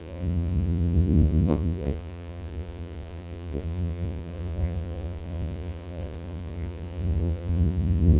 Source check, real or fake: fake